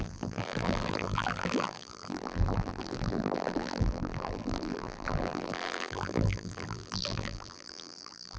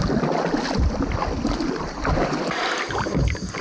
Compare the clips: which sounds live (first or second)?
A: second